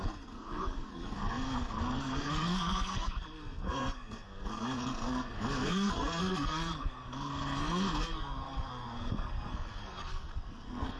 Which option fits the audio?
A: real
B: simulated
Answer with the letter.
B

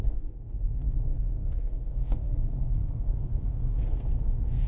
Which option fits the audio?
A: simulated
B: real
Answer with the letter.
A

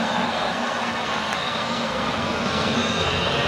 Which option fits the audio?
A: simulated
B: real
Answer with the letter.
A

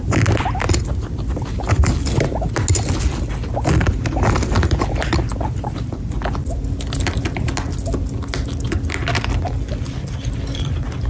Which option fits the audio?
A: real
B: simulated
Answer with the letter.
A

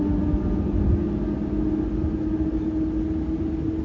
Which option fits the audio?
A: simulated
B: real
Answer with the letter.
B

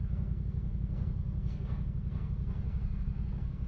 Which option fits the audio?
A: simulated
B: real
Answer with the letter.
A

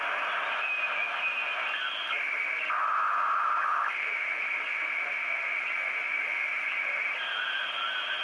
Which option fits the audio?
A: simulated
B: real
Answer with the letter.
B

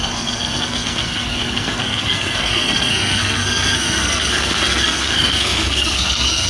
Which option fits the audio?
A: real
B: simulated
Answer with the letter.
B